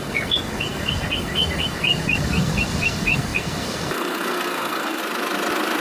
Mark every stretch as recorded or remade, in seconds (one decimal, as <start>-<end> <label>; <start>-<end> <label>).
0.0-5.0 remade; 5.0-5.8 recorded